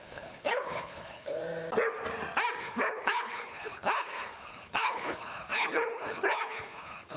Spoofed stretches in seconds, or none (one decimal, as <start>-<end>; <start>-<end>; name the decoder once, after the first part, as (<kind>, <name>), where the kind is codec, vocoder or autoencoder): 0.0-1.4 (codec, HILCodec); 2.6-7.2